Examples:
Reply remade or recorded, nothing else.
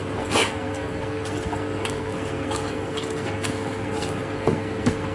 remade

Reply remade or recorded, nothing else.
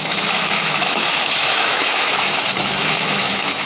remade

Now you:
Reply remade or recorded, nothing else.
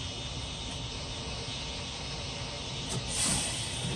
recorded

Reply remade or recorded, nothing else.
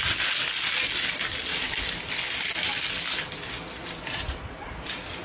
recorded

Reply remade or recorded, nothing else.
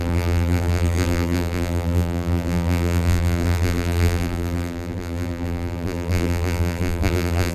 remade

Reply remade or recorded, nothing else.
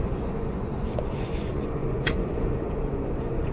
remade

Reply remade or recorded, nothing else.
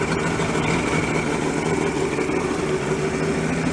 recorded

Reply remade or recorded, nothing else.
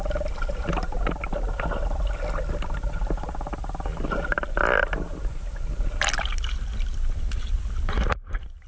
recorded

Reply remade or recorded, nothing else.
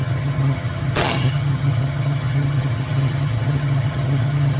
remade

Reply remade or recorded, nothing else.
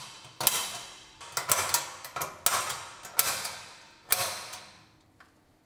recorded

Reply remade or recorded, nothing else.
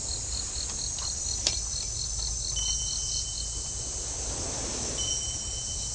recorded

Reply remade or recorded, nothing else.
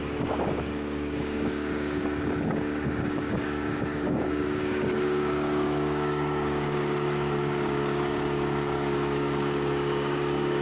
remade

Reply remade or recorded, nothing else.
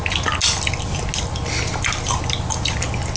recorded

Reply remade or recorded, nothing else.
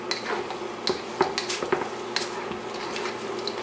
recorded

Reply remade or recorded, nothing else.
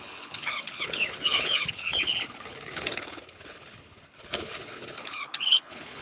remade